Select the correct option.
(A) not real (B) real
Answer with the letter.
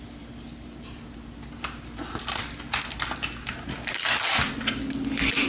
B